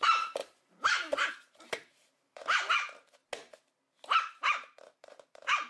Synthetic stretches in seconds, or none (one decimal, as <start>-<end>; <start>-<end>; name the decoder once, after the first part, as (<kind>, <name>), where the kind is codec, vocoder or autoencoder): 0.0-3.2 (vocoder, BigVGAN v2); 4.2-5.7